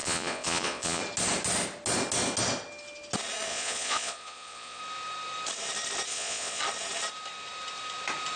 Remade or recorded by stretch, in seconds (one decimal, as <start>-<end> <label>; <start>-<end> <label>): 0.0-1.0 remade; 1.0-3.5 recorded; 3.5-4.8 remade; 4.8-6.1 recorded; 6.1-6.6 remade; 6.6-8.4 recorded

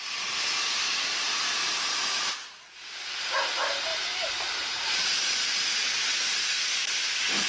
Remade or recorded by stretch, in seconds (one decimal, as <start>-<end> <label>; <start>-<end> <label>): 0.0-0.8 recorded; 0.8-2.5 remade; 2.5-3.9 recorded; 3.9-6.0 remade; 6.0-7.5 recorded

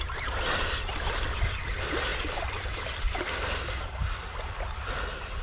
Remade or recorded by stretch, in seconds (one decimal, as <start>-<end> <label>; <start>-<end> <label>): 0.0-5.4 recorded